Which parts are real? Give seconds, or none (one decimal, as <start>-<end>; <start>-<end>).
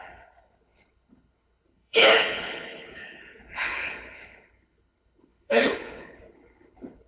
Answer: none